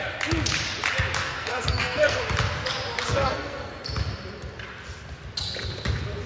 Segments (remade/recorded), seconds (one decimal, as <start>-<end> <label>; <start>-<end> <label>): 0.0-1.2 recorded; 1.2-2.2 remade; 2.2-3.1 recorded; 3.1-3.7 remade; 3.7-6.3 recorded